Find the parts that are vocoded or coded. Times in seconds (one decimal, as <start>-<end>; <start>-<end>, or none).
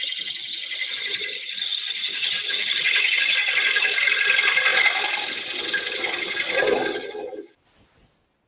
none